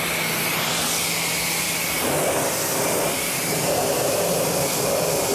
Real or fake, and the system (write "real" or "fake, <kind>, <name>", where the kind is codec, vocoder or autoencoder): real